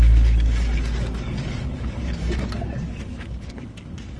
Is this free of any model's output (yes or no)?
no